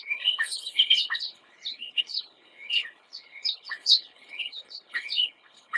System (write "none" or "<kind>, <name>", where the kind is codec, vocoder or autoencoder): codec, HILCodec